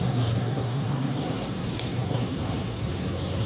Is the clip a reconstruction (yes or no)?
yes